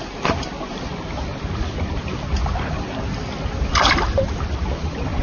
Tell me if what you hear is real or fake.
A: real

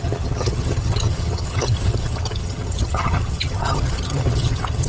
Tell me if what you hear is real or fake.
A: fake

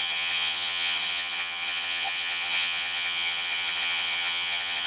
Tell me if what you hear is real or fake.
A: fake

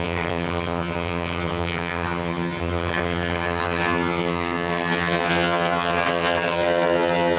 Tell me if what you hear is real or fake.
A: fake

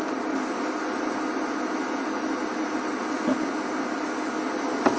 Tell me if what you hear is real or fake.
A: real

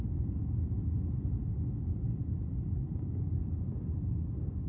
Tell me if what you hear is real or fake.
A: real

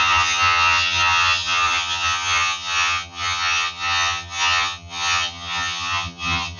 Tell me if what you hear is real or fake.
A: fake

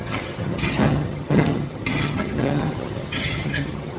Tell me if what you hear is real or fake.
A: fake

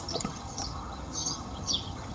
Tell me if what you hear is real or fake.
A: fake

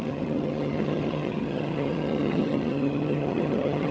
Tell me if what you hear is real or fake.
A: fake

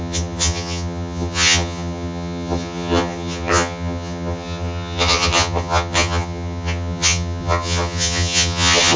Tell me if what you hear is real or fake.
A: fake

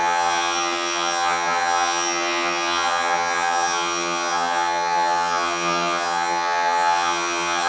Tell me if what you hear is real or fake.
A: fake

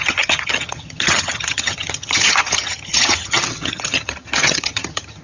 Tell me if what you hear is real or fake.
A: fake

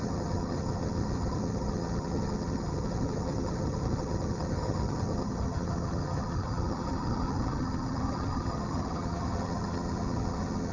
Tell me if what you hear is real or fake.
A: fake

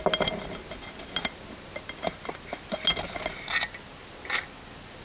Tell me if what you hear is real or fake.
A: real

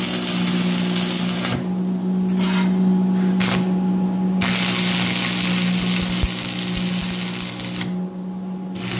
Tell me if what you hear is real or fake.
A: real